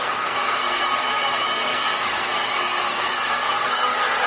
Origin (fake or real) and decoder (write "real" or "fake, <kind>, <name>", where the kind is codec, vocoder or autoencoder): fake, codec, SNAC